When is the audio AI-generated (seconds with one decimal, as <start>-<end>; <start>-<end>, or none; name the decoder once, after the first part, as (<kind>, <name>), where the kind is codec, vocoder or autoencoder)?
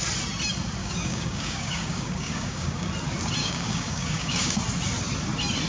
0.8-2.9 (codec, DAC); 3.4-4.6